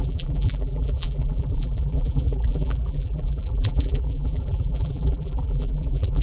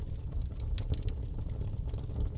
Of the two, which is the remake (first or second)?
first